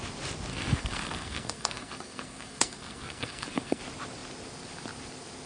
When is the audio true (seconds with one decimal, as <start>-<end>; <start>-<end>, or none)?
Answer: 0.0-0.5; 3.8-5.5